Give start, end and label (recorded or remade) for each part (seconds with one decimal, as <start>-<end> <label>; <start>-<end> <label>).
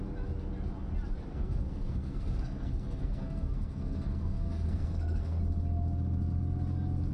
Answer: 0.0-1.3 recorded; 1.3-5.4 remade; 5.4-7.1 recorded